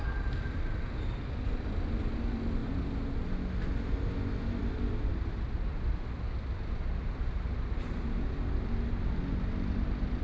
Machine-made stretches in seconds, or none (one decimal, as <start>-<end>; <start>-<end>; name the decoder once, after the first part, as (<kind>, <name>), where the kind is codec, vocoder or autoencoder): none